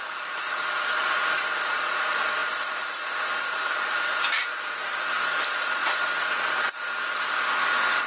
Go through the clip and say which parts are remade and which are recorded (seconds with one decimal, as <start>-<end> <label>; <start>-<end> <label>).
0.0-8.1 remade